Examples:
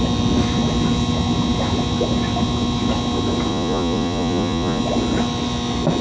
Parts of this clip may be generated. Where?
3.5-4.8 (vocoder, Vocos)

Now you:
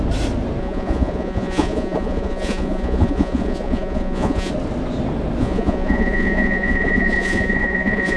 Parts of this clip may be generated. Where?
0.6-4.5 (vocoder, Vocos); 5.4-8.2